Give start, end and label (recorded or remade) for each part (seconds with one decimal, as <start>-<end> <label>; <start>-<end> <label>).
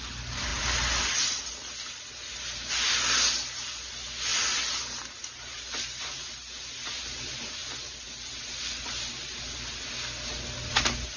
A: 0.0-11.2 recorded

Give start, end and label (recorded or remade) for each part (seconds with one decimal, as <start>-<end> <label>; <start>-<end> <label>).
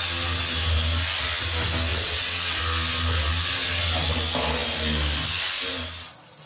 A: 0.0-1.9 recorded; 1.9-2.6 remade; 2.6-6.5 recorded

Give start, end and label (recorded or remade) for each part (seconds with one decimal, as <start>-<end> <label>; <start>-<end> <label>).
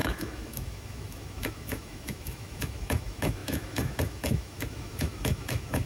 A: 0.0-5.9 remade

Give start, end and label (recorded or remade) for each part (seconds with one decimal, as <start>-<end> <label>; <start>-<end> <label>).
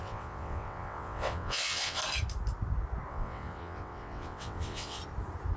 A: 0.0-2.0 remade; 2.0-3.1 recorded; 3.1-5.0 remade; 5.0-5.6 recorded